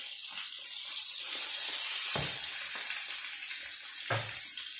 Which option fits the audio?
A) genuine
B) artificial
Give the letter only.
A